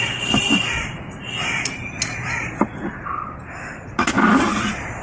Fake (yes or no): no